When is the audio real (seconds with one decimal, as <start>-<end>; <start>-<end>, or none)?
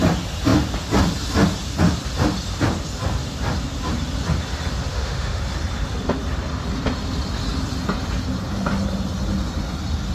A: 0.0-4.9; 5.4-10.1